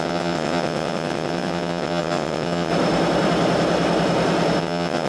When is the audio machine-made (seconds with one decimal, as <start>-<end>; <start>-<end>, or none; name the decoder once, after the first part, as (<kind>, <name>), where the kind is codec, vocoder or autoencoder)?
0.0-2.7 (vocoder, WaveNeXt); 4.6-5.1